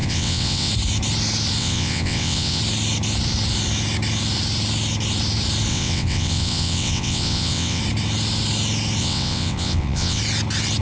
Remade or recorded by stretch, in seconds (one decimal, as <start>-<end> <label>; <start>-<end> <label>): 0.0-0.7 remade; 0.7-1.6 recorded; 1.6-2.6 remade; 2.6-5.7 recorded; 5.7-7.8 remade; 7.8-9.0 recorded; 9.0-10.2 remade; 10.2-10.8 recorded